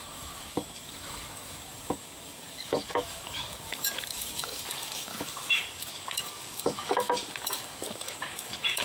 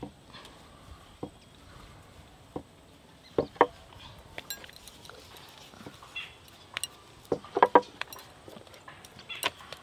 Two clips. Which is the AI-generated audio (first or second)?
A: first